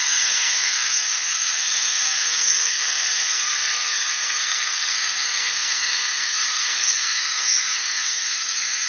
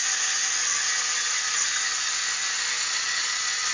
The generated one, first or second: first